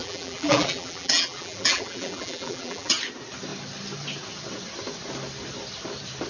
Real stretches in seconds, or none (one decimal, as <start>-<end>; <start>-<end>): 2.9-6.3